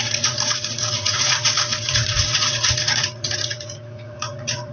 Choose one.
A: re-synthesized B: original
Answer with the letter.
A